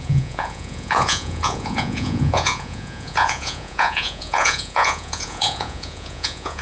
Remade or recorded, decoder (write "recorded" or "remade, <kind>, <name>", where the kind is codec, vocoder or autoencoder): remade, vocoder, Vocos